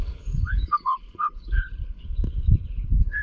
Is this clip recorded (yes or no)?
no